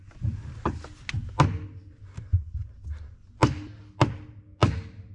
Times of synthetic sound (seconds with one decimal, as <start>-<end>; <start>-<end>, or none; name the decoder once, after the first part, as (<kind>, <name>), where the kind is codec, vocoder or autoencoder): none